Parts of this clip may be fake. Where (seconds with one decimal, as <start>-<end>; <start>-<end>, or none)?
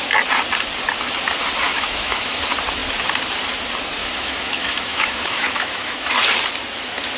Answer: 1.7-2.4; 4.0-6.1